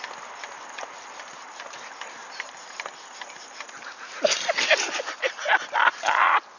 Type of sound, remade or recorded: recorded